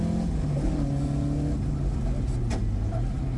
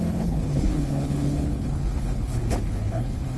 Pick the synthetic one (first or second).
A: second